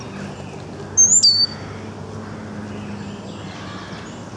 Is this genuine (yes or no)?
yes